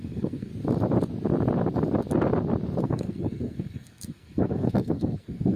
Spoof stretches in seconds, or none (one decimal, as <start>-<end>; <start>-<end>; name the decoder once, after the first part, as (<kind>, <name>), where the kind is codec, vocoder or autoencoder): 0.0-0.5 (codec, SNAC); 2.8-5.6